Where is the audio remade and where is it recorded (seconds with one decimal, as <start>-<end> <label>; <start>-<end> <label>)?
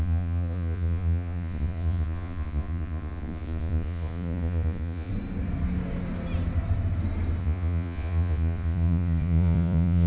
0.0-5.1 remade; 5.1-7.4 recorded; 7.4-10.1 remade